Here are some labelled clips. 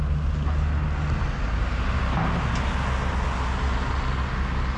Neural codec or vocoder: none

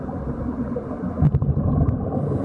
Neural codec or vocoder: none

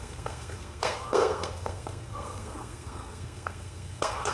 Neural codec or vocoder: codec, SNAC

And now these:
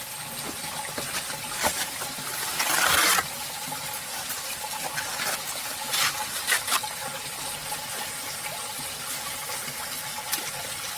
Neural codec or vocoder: none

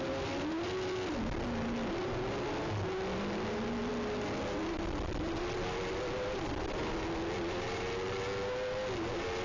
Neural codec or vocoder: none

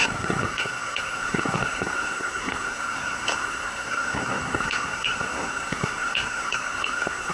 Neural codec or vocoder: codec, SNAC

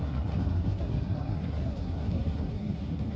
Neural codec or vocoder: codec, SNAC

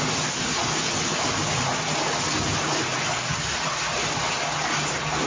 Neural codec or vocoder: none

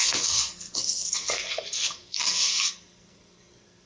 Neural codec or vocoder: codec, SNAC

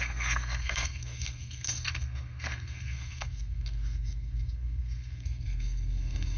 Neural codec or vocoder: codec, SNAC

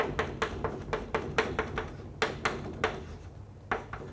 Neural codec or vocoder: none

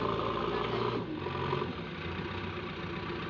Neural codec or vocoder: none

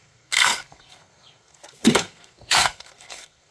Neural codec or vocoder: codec, SNAC